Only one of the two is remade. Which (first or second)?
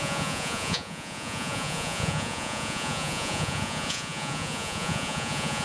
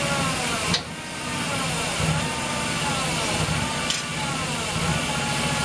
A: first